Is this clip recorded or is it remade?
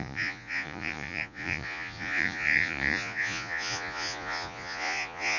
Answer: remade